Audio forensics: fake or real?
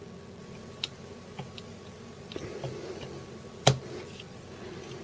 real